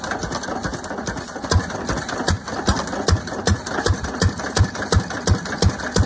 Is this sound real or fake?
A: real